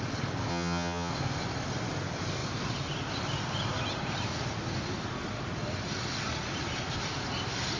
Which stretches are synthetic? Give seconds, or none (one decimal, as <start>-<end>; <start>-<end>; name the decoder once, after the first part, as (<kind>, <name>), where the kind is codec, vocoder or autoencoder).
0.5-1.1 (vocoder, HiFi-GAN)